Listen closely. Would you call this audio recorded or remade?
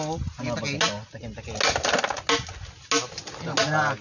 recorded